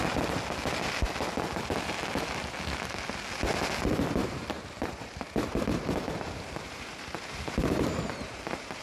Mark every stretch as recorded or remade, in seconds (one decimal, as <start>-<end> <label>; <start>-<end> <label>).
0.0-4.2 recorded; 4.2-8.8 remade